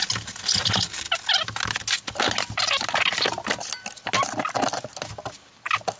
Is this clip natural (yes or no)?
yes